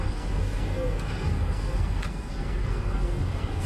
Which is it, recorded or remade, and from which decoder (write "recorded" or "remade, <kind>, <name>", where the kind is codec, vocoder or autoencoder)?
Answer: remade, codec, SNAC